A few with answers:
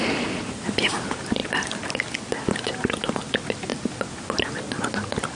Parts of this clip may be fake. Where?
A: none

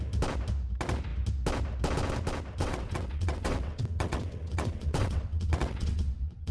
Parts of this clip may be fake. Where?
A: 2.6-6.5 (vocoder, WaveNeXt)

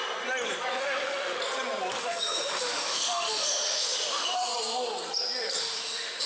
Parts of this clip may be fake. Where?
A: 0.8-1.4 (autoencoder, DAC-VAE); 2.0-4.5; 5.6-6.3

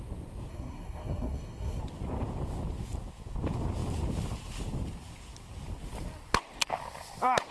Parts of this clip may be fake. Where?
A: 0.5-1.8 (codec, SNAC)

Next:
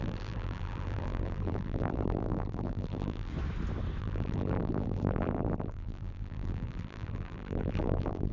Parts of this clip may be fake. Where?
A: 0.0-3.3 (vocoder, BigVGAN v2); 4.0-8.3